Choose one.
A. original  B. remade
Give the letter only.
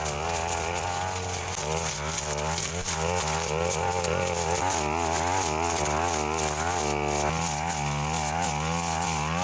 A